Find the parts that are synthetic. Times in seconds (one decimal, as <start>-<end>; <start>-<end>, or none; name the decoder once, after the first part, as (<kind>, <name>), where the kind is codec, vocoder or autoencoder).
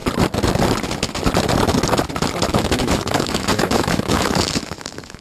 2.5-5.2 (autoencoder, DAC-VAE)